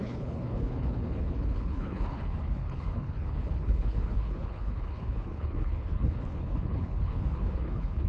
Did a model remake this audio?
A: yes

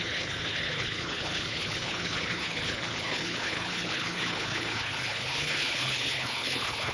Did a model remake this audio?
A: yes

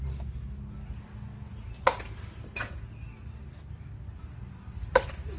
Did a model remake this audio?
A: no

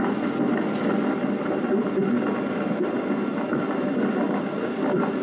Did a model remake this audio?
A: no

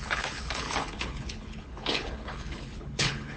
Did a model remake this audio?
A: yes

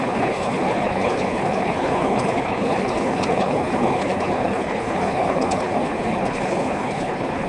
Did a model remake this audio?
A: yes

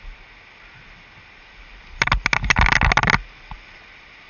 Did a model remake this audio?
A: no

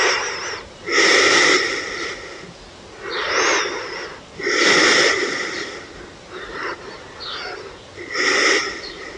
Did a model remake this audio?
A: no